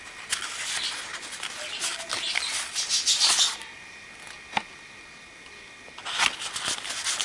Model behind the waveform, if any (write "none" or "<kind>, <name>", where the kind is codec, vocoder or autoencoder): none